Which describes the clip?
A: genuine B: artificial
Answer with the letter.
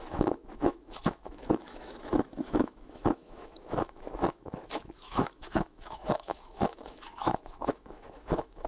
B